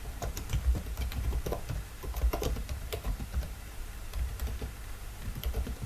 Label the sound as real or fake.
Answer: fake